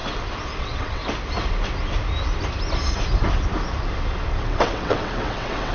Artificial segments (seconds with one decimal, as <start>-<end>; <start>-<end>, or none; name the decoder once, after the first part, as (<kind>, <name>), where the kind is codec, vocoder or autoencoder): 0.6-1.0 (vocoder, WaveNeXt); 4.4-5.7